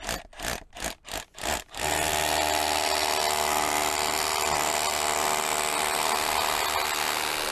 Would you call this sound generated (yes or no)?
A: no